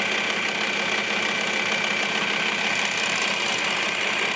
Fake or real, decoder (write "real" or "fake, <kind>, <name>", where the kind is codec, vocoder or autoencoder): real